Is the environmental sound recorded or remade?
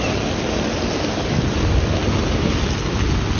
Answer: recorded